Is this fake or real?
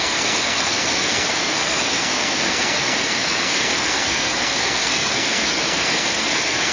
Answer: fake